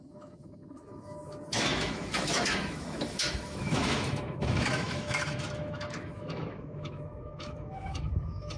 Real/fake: fake